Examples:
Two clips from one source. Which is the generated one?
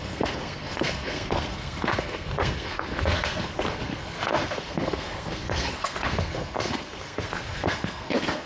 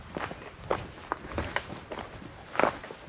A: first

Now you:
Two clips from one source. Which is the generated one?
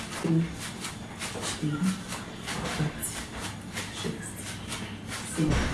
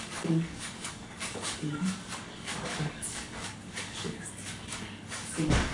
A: second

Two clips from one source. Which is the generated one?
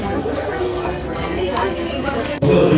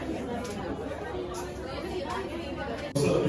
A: first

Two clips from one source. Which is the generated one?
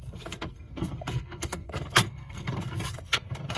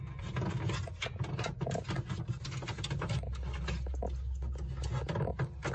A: first